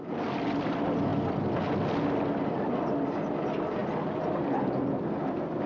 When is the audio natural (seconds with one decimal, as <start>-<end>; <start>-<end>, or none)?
0.0-5.7